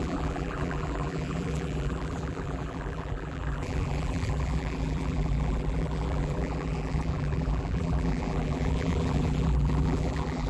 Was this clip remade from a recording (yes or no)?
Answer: yes